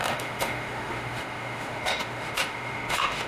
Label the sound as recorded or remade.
remade